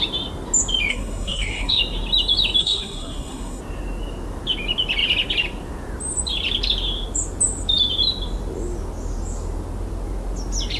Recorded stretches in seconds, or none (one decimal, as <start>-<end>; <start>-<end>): 0.0-0.9; 1.8-2.6; 3.6-10.8